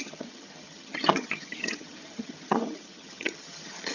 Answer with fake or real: fake